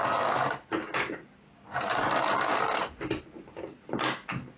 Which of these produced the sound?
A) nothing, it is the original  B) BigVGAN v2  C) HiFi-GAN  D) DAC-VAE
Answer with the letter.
A